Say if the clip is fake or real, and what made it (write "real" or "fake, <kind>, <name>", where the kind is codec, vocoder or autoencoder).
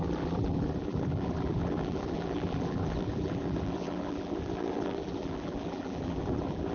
fake, vocoder, BigVGAN v2